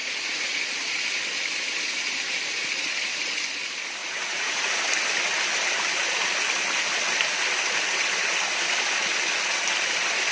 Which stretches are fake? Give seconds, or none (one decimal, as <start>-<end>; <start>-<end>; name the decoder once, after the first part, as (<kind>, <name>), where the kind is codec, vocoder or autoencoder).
0.0-0.6 (vocoder, Vocos); 4.0-4.8